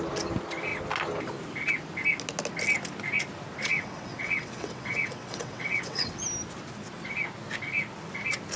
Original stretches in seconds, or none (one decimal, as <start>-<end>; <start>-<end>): 0.0-3.7; 6.2-8.6